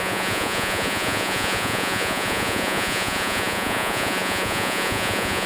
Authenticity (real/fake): fake